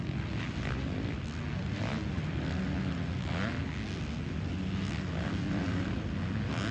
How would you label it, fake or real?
real